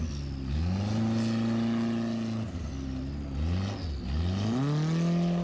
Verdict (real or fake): real